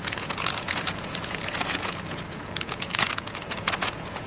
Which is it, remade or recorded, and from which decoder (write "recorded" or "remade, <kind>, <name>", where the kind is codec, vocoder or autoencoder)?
remade, vocoder, Vocos